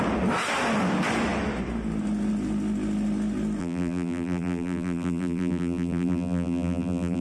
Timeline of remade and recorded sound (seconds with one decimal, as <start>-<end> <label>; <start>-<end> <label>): 0.0-3.6 recorded; 3.6-7.2 remade